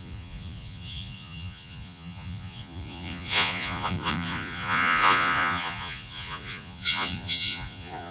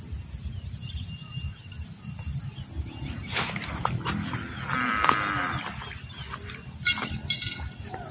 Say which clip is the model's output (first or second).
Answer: first